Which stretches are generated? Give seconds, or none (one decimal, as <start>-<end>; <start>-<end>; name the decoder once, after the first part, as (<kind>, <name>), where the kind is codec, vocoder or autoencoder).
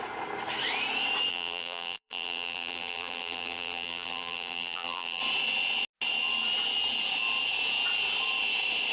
1.3-5.2 (vocoder, BigVGAN v2)